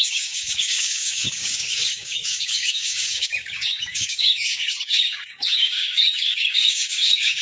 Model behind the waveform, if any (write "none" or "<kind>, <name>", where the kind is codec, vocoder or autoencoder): codec, DAC